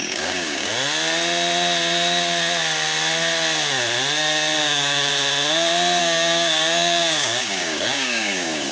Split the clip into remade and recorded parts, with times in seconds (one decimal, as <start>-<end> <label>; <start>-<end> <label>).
0.0-0.7 remade; 0.7-4.6 recorded; 4.6-5.1 remade; 5.1-6.0 recorded; 6.0-8.7 remade